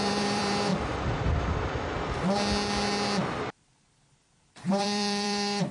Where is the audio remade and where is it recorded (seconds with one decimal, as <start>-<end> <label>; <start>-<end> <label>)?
0.0-0.7 remade; 0.7-4.1 recorded; 4.1-5.7 remade